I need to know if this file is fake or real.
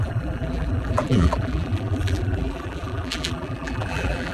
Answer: fake